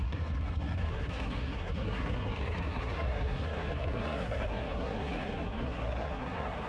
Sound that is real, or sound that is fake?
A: fake